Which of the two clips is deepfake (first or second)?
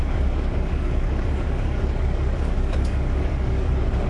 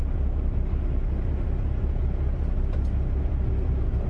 first